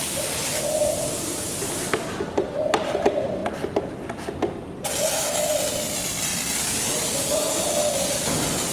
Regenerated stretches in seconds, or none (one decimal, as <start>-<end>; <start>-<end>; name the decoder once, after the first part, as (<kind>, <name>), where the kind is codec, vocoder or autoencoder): none